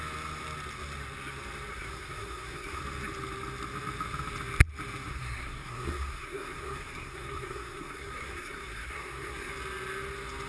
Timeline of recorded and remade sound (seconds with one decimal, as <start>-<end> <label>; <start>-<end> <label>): 0.0-1.7 recorded; 1.7-2.8 remade; 2.8-5.1 recorded; 5.1-9.5 remade; 9.5-10.5 recorded